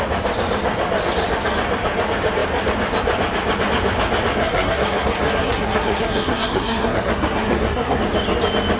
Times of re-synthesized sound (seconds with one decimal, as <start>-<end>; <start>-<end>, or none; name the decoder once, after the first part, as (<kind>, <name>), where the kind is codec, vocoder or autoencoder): 4.4-8.0 (codec, SNAC)

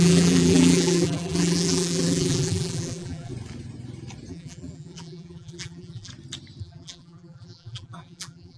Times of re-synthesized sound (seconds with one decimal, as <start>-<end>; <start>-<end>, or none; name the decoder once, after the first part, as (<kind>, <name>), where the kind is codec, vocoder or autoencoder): 0.0-3.3 (vocoder, BigVGAN v2); 4.3-6.1; 6.6-8.6

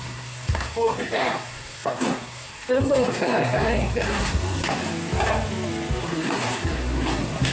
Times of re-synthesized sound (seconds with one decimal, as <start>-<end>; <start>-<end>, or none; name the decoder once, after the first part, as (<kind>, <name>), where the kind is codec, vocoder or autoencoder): 0.0-4.8 (codec, SNAC); 6.0-7.5

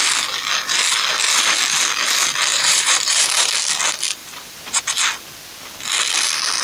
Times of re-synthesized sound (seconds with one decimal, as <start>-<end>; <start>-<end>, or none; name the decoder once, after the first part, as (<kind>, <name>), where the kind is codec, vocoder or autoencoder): 2.5-3.5 (vocoder, BigVGAN v2); 4.2-4.8

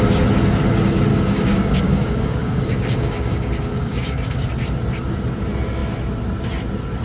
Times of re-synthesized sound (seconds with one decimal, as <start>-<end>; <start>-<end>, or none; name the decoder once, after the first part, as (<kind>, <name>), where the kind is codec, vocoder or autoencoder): 1.1-4.5 (codec, DAC)

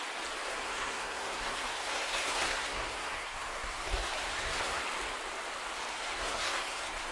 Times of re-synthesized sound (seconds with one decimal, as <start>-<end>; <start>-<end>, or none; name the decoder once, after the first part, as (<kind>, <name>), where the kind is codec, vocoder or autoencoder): 0.5-4.8 (codec, SNAC); 5.9-7.1

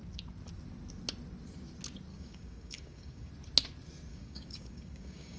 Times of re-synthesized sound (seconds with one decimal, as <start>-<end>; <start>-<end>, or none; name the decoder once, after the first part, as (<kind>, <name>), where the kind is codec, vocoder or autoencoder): 2.1-3.3 (codec, DAC); 4.1-5.4